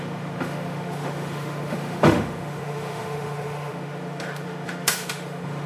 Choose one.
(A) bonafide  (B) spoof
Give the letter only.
B